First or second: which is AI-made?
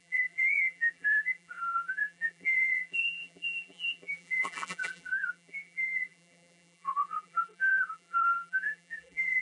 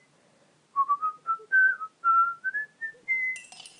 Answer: first